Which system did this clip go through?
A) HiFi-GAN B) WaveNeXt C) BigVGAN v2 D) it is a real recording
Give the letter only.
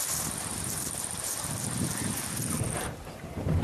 C